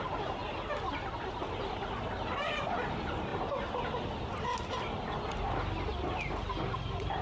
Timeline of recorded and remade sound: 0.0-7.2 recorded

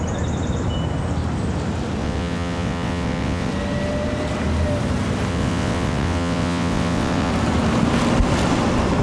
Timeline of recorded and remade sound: 0.0-2.0 recorded; 2.0-3.5 remade; 3.5-5.3 recorded; 5.3-7.3 remade; 7.3-9.0 recorded

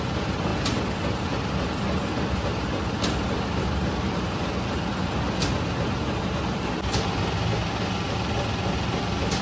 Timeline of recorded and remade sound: 0.0-9.4 recorded

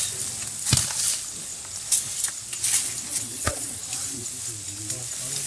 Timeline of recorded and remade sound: 0.0-3.1 recorded; 3.1-3.8 remade; 3.8-5.5 recorded

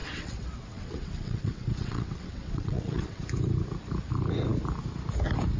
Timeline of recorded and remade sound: 0.0-3.2 remade; 3.2-5.6 recorded

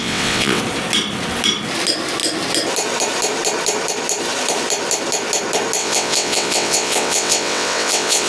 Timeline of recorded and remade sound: 0.0-0.6 remade; 0.6-5.8 recorded; 5.8-8.3 remade